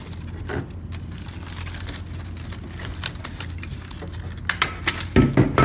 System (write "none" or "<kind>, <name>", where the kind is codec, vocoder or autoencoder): none